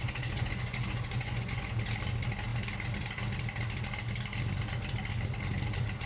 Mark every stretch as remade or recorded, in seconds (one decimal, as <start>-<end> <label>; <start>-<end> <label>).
0.0-1.8 remade; 1.8-6.1 recorded